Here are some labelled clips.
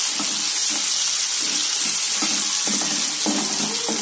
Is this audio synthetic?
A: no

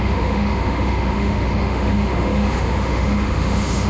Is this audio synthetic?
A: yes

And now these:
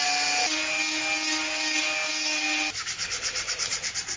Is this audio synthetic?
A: no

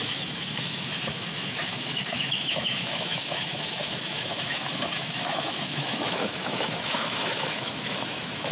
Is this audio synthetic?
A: yes